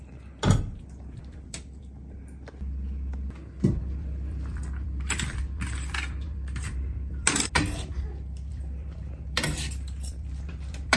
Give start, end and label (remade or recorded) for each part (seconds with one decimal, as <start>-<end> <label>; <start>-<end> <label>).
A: 0.0-1.8 remade; 1.8-3.8 recorded; 3.8-7.9 remade; 7.9-8.5 recorded; 8.5-11.0 remade